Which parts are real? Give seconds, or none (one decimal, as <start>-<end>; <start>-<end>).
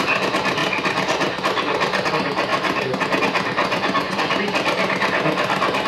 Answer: 0.0-3.6; 4.3-5.9